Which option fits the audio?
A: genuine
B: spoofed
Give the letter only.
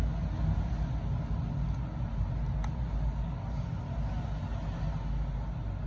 A